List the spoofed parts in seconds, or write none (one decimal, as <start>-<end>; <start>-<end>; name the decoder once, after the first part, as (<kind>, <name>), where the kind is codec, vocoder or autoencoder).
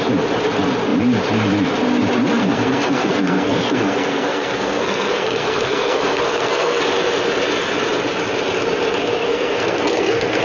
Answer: 2.4-6.8 (codec, SNAC); 9.2-10.4